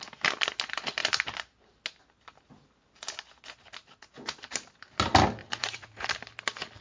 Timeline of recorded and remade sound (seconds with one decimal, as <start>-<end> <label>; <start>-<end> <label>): 0.0-5.4 recorded; 5.4-6.1 remade; 6.1-6.8 recorded